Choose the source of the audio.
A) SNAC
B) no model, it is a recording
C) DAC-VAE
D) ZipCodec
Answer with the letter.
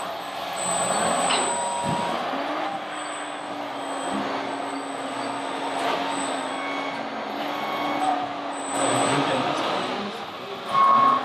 B